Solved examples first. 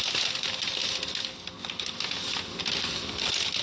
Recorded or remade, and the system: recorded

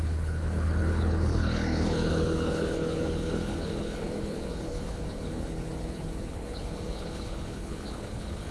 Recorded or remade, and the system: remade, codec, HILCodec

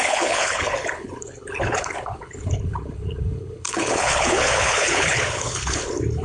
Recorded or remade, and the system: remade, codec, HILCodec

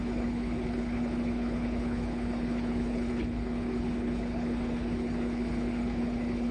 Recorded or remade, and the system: remade, codec, HILCodec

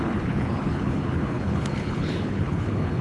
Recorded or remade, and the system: remade, codec, HILCodec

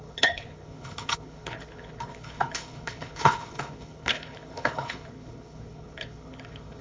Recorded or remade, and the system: remade, codec, HILCodec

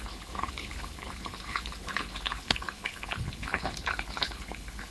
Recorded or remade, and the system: remade, codec, HILCodec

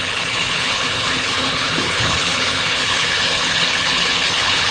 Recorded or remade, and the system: remade, codec, HILCodec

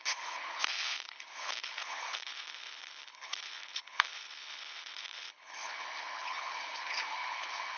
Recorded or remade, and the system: remade, codec, HILCodec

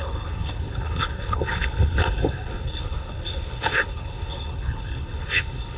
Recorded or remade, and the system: remade, codec, HILCodec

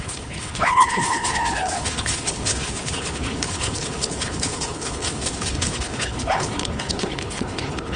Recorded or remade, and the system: remade, codec, HILCodec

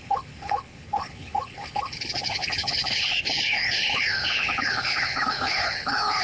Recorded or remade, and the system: remade, codec, HILCodec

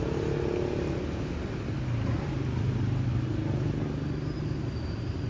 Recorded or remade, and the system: recorded